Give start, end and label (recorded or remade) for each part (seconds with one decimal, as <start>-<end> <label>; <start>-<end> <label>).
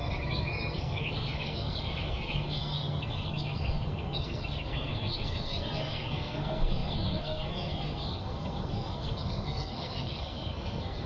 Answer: 0.0-11.1 remade